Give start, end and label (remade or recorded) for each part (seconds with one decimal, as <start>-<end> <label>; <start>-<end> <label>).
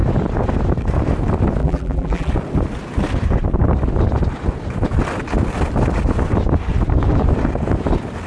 0.0-1.6 recorded; 1.6-2.3 remade; 2.3-8.3 recorded